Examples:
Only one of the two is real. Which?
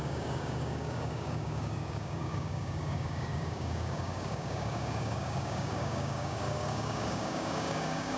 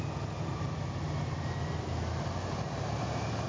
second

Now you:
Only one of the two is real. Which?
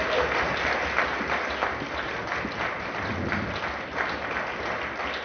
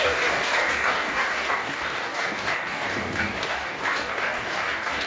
first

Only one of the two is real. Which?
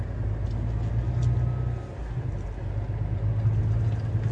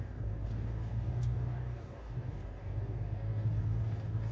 first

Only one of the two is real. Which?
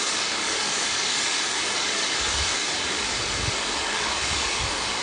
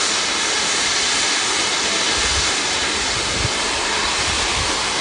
second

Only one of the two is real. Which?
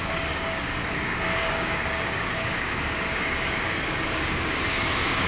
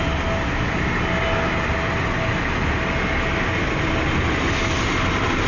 second